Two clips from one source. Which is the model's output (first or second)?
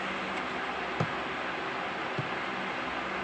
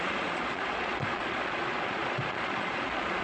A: second